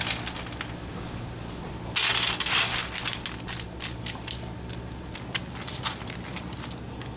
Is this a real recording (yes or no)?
yes